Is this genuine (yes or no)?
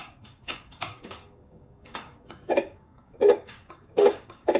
no